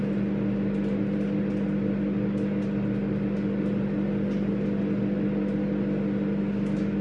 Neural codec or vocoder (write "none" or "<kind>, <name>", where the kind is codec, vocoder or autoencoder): none